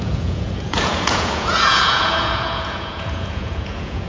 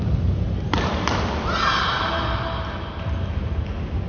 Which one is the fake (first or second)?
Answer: first